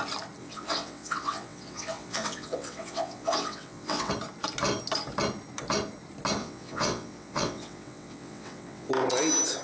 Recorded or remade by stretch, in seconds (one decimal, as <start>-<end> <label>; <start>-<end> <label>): 0.0-0.4 recorded; 0.4-4.1 remade; 4.1-6.4 recorded; 6.4-8.9 remade; 8.9-9.6 recorded